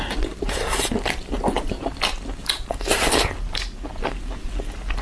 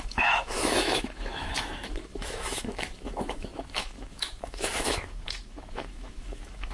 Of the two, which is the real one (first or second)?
first